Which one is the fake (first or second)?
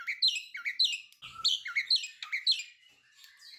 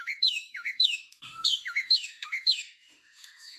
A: second